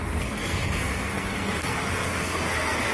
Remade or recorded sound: remade